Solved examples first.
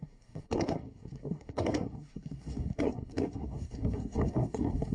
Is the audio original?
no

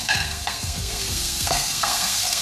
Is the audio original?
no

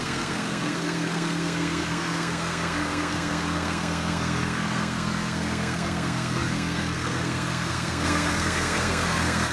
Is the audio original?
no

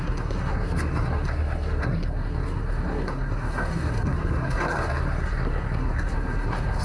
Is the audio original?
no